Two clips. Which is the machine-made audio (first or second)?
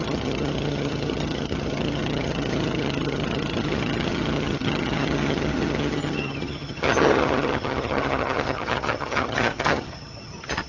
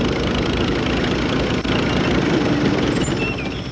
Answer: first